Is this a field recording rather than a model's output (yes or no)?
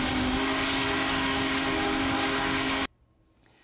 yes